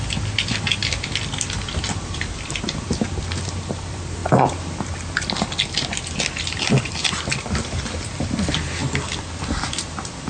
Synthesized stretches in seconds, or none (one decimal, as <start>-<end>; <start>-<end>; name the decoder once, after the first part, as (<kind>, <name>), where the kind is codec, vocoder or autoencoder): 0.0-4.2 (vocoder, BigVGAN v2); 6.8-10.3